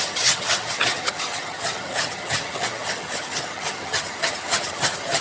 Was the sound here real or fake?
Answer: fake